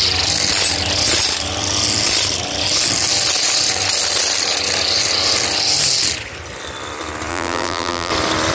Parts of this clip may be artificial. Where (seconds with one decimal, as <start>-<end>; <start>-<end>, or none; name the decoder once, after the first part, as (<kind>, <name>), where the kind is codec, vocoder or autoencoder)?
7.3-8.1 (vocoder, BigVGAN v2)